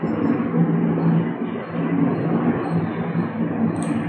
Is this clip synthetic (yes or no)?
no